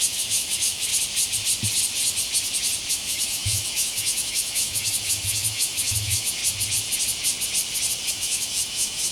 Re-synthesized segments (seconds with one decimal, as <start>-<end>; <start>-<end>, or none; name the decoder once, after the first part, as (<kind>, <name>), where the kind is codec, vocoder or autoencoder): 0.0-0.9 (autoencoder, DAC-VAE); 2.9-6.4; 8.1-9.1